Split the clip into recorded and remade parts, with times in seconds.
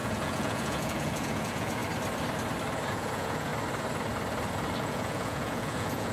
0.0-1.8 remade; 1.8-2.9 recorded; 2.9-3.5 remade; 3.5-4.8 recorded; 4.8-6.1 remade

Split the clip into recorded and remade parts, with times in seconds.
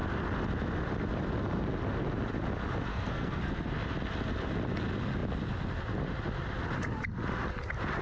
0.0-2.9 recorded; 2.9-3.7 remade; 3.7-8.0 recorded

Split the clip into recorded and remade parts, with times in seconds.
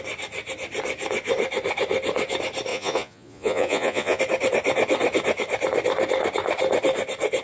0.0-2.7 recorded; 2.7-4.2 remade; 4.2-7.4 recorded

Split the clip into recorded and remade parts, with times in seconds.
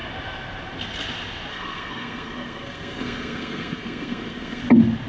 0.0-1.5 recorded; 1.5-4.6 remade; 4.6-5.1 recorded